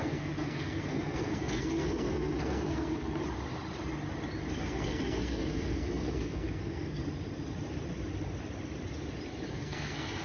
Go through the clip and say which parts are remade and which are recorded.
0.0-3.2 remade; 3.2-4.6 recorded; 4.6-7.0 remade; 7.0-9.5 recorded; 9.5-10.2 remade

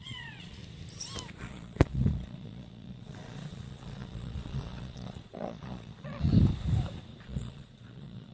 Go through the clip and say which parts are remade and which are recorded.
0.0-0.6 remade; 0.6-1.4 recorded; 1.4-6.3 remade; 6.3-7.2 recorded; 7.2-8.3 remade

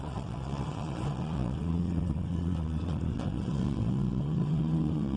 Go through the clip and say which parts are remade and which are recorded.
0.0-5.2 remade

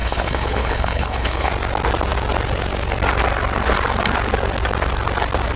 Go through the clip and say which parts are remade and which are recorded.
0.0-1.5 remade; 1.5-5.6 recorded

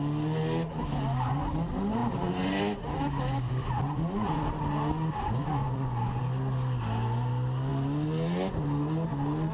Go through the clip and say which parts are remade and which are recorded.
0.0-5.6 recorded; 5.6-6.2 remade; 6.2-9.5 recorded